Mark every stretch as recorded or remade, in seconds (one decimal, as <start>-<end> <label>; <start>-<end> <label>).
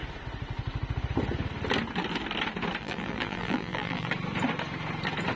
0.0-2.8 recorded; 2.8-4.1 remade; 4.1-5.4 recorded